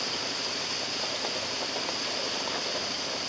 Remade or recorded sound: recorded